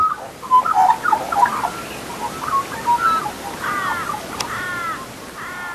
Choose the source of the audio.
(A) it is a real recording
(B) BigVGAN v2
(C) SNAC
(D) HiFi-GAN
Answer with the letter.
A